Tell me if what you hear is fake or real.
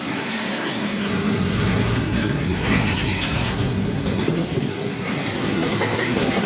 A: fake